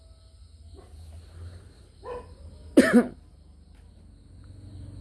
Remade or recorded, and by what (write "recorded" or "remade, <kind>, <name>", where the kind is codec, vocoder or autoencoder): recorded